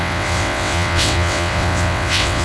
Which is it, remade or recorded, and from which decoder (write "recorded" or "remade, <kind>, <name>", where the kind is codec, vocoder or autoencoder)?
remade, vocoder, WaveNeXt